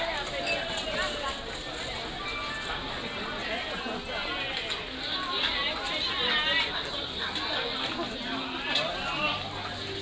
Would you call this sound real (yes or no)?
yes